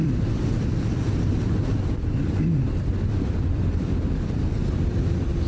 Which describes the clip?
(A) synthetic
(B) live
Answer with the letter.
A